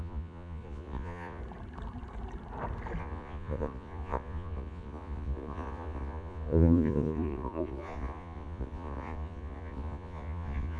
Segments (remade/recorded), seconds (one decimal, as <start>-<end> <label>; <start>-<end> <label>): 0.0-1.4 remade; 1.4-3.0 recorded; 3.0-10.8 remade